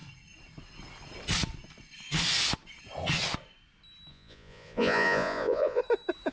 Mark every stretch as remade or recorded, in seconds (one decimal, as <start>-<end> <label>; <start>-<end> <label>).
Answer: 0.0-4.1 recorded; 4.1-5.8 remade; 5.8-6.3 recorded